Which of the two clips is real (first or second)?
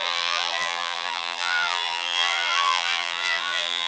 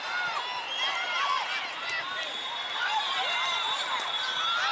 second